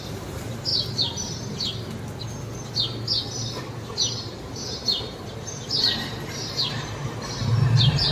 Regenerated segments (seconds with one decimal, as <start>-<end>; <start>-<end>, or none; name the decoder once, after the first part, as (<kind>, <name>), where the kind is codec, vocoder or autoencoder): 0.0-0.7 (vocoder, BigVGAN v2); 3.6-8.1